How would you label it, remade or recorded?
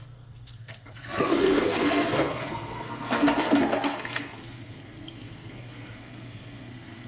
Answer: remade